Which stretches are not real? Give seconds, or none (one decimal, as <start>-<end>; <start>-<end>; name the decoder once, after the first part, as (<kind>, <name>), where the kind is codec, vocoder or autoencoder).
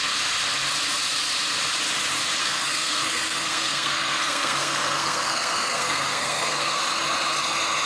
2.4-6.8 (codec, SNAC)